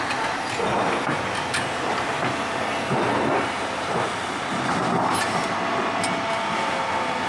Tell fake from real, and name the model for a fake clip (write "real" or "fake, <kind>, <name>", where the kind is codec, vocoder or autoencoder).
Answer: real